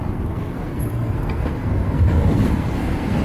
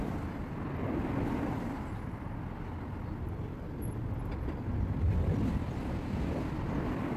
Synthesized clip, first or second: first